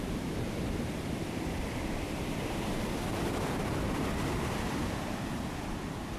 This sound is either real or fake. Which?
fake